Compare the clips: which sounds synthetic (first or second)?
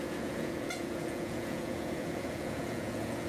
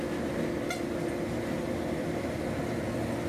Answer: first